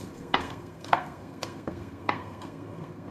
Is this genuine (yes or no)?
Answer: no